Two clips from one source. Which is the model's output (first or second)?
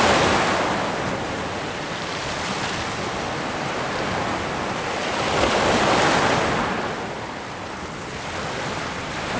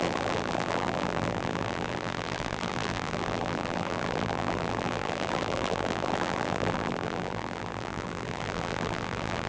second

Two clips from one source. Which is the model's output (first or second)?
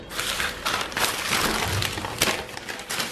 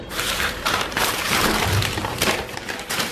second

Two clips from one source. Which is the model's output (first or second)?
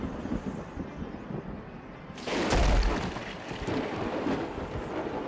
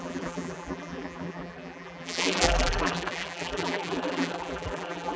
second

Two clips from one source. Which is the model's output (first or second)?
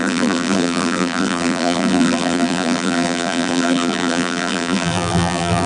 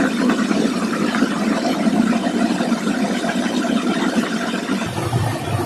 first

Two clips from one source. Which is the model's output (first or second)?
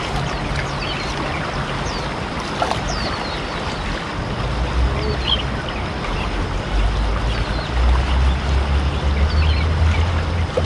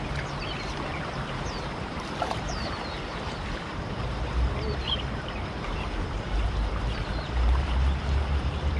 second